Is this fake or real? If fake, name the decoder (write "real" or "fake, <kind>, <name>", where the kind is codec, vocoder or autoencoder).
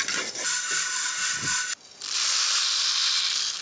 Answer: real